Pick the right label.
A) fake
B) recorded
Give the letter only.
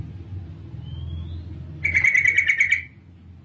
B